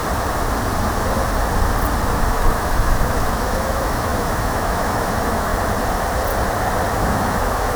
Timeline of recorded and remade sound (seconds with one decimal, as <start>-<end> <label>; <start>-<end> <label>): 0.0-2.3 recorded; 2.3-5.5 remade; 5.5-6.9 recorded; 6.9-7.8 remade

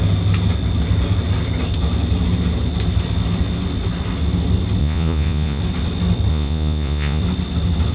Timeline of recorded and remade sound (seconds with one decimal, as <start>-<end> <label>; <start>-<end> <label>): 0.0-4.8 recorded; 4.8-5.6 remade; 5.6-6.3 recorded; 6.3-7.2 remade; 7.2-7.9 recorded

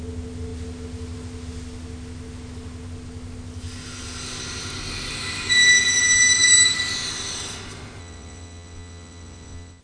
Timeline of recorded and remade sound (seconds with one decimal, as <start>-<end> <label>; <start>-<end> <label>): 0.0-8.0 recorded; 8.0-9.8 remade

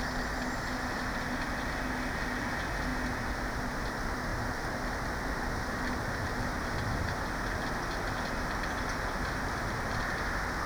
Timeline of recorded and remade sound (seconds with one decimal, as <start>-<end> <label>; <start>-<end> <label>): 0.0-10.7 recorded

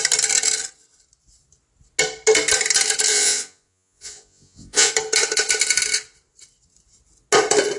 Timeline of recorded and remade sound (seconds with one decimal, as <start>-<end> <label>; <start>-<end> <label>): 0.0-3.1 recorded; 3.1-4.9 remade; 4.9-7.8 recorded

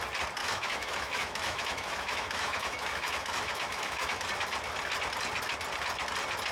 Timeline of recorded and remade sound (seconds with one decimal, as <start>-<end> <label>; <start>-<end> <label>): 0.0-0.4 recorded; 0.4-4.3 remade; 4.3-6.5 recorded

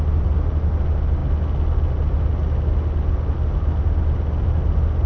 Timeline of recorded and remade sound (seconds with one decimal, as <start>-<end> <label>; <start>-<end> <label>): 0.0-5.1 recorded

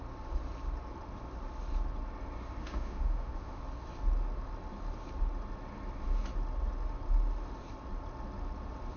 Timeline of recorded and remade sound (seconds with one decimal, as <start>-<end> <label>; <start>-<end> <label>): 0.0-2.6 recorded; 2.6-3.6 remade; 3.6-9.0 recorded